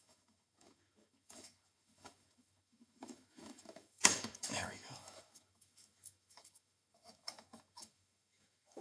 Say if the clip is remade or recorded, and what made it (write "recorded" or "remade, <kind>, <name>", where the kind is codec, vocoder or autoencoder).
remade, autoencoder, DAC-VAE